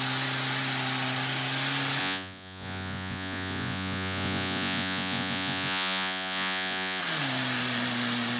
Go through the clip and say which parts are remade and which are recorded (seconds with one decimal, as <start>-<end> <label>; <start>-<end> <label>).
0.0-2.0 recorded; 2.0-7.0 remade; 7.0-8.4 recorded